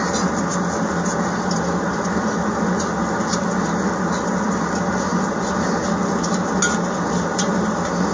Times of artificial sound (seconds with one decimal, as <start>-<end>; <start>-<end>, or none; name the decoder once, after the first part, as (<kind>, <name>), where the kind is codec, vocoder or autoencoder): none